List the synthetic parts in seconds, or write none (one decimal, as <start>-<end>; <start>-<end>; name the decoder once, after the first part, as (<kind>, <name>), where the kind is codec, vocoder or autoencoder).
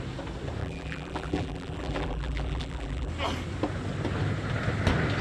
0.6-3.1 (vocoder, BigVGAN v2)